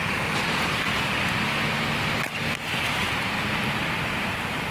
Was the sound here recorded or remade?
recorded